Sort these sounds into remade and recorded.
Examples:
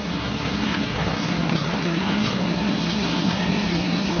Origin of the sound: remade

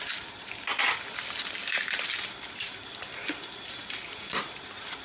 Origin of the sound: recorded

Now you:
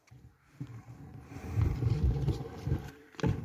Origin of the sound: remade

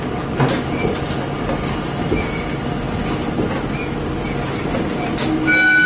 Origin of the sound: recorded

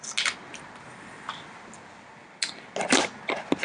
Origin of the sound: recorded